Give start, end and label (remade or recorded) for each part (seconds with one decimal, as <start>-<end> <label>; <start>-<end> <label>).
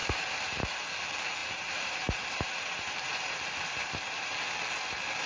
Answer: 0.0-0.6 remade; 0.6-1.4 recorded; 1.4-4.6 remade; 4.6-5.3 recorded